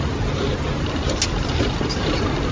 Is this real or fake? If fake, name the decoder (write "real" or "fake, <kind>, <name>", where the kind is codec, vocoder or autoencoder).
real